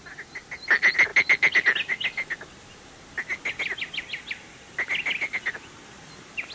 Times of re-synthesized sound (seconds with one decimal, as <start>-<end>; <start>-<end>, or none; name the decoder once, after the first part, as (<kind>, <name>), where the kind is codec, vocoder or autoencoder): none